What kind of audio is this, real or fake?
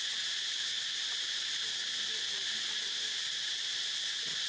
real